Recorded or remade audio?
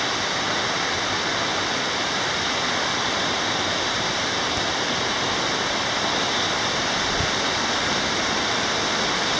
remade